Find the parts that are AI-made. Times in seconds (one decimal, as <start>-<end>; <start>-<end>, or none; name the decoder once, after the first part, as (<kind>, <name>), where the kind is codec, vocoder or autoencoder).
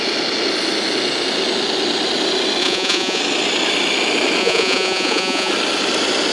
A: 2.6-3.2 (vocoder, Vocos); 4.4-5.5